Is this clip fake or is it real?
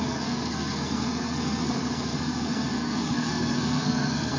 fake